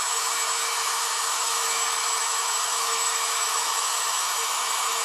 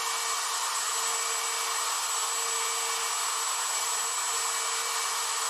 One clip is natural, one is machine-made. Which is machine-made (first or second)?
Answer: first